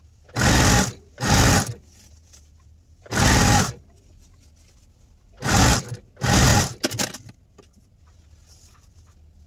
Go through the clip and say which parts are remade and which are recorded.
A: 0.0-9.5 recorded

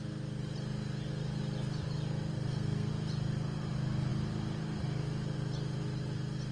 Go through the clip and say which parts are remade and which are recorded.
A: 0.0-2.3 recorded; 2.3-2.9 remade; 2.9-6.5 recorded

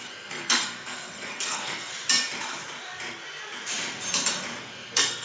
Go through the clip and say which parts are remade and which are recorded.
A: 0.0-1.9 remade; 1.9-4.6 recorded; 4.6-5.2 remade

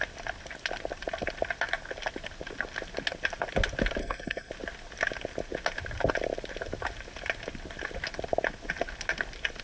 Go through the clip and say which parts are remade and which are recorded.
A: 0.0-4.0 recorded; 4.0-4.5 remade; 4.5-9.6 recorded